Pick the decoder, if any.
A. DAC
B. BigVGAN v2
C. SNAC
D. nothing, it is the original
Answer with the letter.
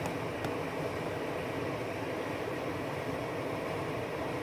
D